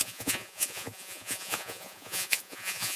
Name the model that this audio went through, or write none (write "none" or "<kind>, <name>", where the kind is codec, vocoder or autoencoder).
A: vocoder, Vocos